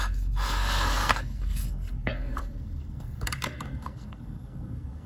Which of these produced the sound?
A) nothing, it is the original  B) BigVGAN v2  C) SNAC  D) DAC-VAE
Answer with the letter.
C